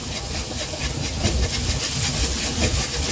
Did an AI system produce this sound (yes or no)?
no